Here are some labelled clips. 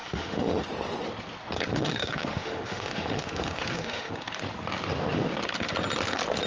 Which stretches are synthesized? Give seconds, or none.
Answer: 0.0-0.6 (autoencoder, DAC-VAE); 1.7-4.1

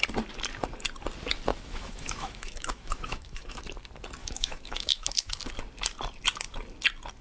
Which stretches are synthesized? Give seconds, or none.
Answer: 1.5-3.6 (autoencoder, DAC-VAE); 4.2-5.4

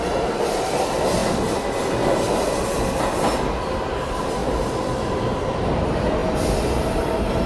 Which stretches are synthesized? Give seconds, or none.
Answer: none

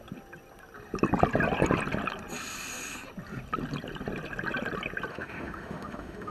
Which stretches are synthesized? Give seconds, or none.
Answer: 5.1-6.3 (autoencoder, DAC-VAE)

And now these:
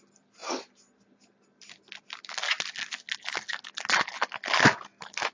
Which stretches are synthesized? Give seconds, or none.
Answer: none

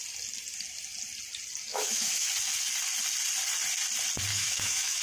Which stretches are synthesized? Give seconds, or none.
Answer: 1.7-2.3 (autoencoder, DAC-VAE); 4.3-5.0